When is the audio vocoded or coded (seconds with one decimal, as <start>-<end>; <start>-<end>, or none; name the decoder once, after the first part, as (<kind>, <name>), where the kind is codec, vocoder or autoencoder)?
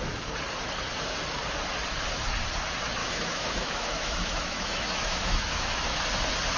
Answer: 3.0-6.0 (autoencoder, DAC-VAE)